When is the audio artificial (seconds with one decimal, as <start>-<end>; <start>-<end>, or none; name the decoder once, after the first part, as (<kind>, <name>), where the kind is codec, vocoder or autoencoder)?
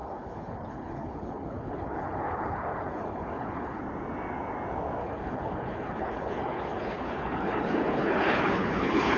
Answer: 0.0-3.8 (codec, HILCodec); 5.0-9.2